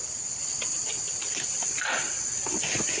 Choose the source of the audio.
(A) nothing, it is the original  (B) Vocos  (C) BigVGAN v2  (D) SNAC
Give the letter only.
A